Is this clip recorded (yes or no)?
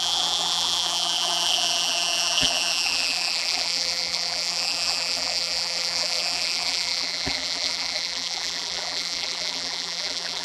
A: no